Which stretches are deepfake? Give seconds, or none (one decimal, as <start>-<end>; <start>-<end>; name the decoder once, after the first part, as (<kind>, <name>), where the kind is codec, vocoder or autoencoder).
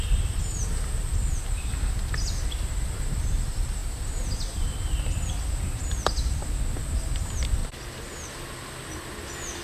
none